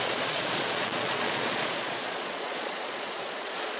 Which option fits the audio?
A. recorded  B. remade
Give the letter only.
B